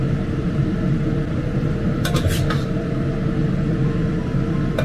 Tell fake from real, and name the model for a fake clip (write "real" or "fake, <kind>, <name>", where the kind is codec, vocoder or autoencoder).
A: fake, vocoder, BigVGAN v2